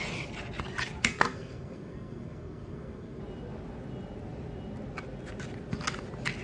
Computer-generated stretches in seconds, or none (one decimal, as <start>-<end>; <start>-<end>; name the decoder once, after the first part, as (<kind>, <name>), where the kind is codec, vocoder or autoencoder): 1.0-3.2 (codec, SNAC)

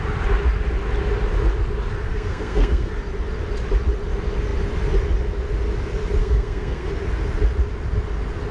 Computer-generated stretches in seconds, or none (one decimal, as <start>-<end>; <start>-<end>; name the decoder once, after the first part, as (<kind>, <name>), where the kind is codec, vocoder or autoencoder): 2.1-2.9 (codec, SNAC); 6.2-6.9